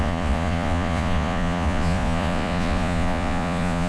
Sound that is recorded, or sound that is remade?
remade